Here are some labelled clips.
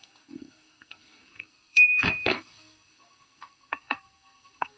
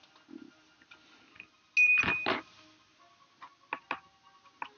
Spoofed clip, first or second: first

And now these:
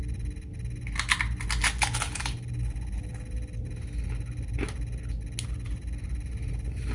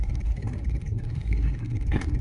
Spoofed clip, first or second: second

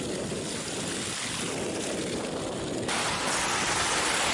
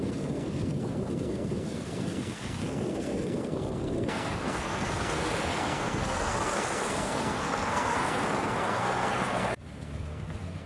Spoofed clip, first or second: second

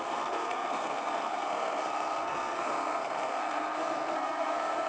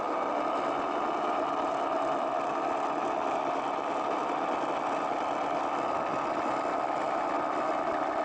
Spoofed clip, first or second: first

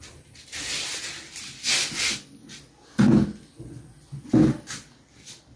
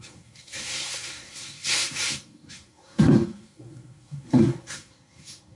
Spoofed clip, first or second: second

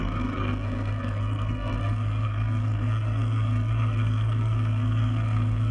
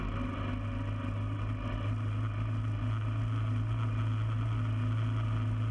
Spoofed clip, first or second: first